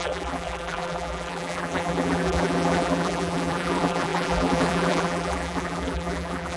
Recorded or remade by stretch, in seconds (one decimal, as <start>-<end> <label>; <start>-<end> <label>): 0.0-6.6 remade